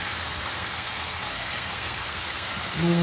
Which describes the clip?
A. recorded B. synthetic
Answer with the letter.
B